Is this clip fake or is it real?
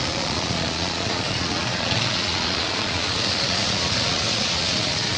fake